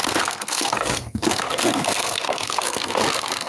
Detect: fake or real fake